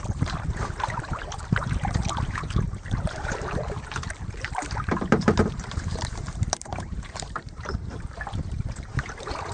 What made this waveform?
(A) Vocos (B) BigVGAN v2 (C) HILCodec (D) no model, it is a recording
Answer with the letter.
B